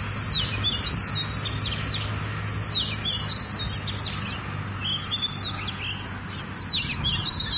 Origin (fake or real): real